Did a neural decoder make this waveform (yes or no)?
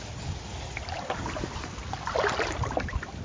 no